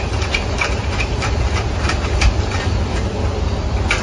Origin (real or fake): fake